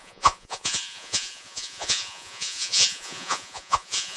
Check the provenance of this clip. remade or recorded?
remade